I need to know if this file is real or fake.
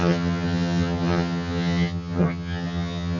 fake